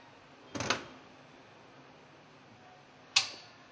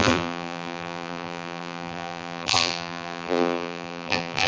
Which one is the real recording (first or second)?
first